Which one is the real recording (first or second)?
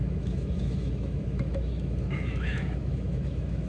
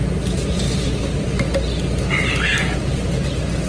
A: second